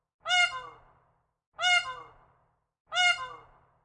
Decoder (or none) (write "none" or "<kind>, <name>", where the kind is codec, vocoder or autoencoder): none